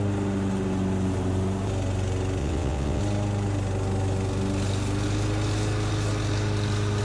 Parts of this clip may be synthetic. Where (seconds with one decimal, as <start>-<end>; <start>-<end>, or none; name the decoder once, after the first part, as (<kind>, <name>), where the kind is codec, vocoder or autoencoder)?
2.4-3.0 (vocoder, WaveNeXt)